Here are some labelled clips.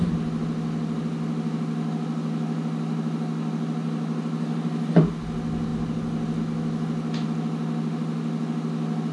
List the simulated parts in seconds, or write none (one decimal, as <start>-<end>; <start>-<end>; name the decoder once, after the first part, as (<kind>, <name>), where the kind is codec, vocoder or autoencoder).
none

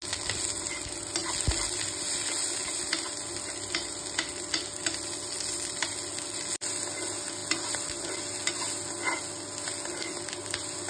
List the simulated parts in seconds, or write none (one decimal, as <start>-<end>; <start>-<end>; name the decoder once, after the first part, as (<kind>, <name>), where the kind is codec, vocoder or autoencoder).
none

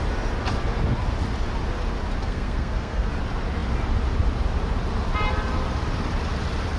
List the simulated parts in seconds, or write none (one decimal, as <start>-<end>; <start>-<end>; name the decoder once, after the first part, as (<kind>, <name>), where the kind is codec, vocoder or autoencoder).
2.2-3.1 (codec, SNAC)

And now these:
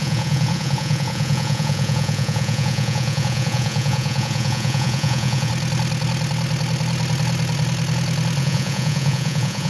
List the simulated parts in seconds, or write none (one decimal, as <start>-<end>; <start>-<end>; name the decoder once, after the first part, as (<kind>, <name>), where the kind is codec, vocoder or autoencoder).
0.0-5.5 (vocoder, Vocos); 8.4-9.7